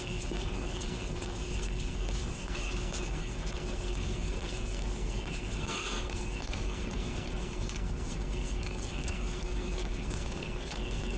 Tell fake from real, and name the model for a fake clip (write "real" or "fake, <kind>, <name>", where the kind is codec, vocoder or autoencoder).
fake, codec, SNAC